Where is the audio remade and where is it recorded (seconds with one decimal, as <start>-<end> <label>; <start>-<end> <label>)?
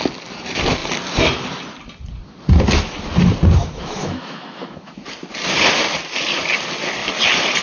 0.0-3.6 recorded; 3.6-5.0 remade; 5.0-7.6 recorded